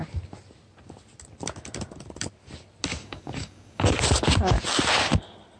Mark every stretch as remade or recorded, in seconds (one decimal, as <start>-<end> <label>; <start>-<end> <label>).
0.0-2.9 recorded; 2.9-3.9 remade; 3.9-5.6 recorded